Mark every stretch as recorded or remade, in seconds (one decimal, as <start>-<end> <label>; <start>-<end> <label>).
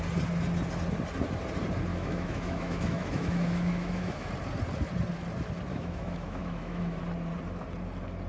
0.0-1.9 recorded; 1.9-4.3 remade; 4.3-5.7 recorded; 5.7-7.0 remade; 7.0-8.3 recorded